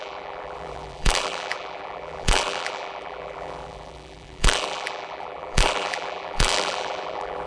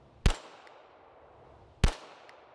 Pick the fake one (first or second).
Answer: first